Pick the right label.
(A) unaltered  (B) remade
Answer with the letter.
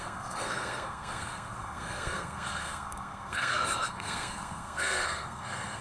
B